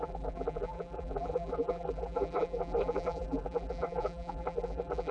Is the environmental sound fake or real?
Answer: fake